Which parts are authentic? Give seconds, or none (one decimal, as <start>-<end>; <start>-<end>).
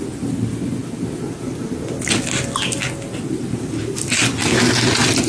0.0-5.3